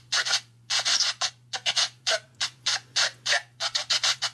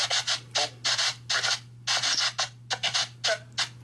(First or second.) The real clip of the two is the second